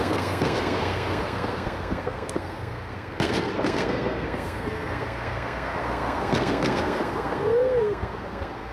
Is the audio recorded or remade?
remade